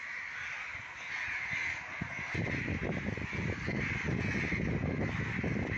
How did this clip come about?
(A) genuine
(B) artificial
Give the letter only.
A